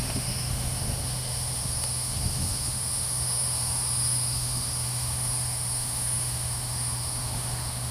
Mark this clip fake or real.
fake